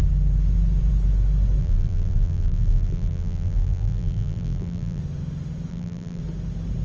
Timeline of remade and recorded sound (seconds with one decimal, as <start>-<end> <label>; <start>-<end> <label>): 0.0-1.6 recorded; 1.6-5.0 remade; 5.0-5.7 recorded; 5.7-6.2 remade; 6.2-6.8 recorded